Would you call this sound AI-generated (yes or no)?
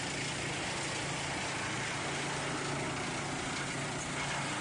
no